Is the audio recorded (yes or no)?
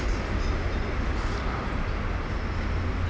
yes